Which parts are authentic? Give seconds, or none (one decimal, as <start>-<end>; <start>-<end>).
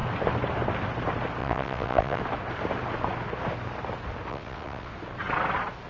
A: 0.0-1.4; 2.2-4.3; 4.9-5.9